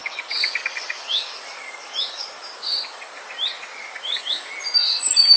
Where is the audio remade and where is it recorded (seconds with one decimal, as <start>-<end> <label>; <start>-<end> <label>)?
0.0-3.2 remade; 3.2-3.8 recorded; 3.8-4.5 remade; 4.5-5.4 recorded